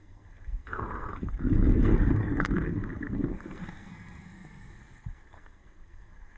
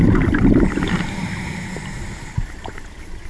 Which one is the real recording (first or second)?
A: second